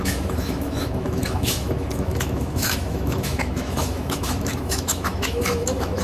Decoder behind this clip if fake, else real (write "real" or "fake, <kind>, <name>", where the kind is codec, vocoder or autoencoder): fake, autoencoder, DAC-VAE